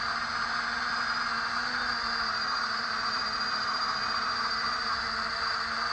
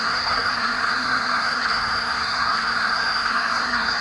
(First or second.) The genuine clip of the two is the first